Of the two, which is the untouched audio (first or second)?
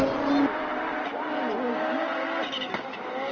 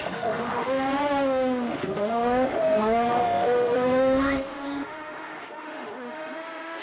first